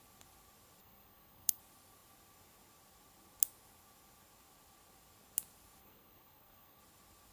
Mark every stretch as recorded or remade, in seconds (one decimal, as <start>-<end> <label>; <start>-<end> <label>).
0.0-0.8 recorded; 0.8-1.6 remade; 1.6-5.8 recorded; 5.8-6.8 remade; 6.8-7.3 recorded